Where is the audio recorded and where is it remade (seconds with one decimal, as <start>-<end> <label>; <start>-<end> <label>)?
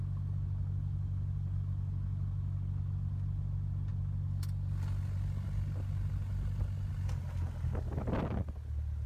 0.0-9.1 recorded